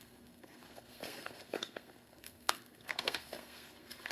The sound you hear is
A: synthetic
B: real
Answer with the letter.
A